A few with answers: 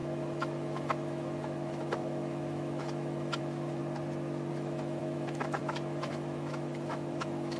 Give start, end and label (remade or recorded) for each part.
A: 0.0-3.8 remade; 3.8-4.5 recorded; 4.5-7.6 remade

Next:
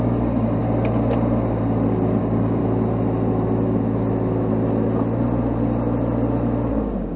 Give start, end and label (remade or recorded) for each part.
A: 0.0-0.6 remade; 0.6-2.2 recorded; 2.2-2.6 remade; 2.6-6.7 recorded; 6.7-7.2 remade

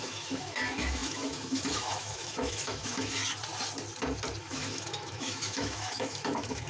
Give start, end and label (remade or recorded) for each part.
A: 0.0-3.2 remade; 3.2-4.4 recorded; 4.4-6.7 remade

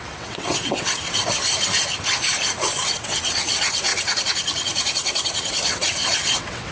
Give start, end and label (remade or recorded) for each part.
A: 0.0-1.2 remade; 1.2-2.5 recorded; 2.5-6.7 remade

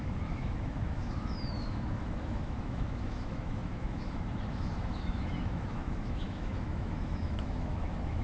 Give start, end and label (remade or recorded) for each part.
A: 0.0-8.2 remade

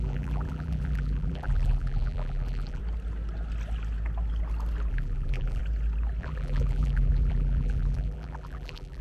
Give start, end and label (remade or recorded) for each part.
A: 0.0-2.8 remade; 2.8-4.9 recorded; 4.9-5.6 remade; 5.6-6.2 recorded; 6.2-9.0 remade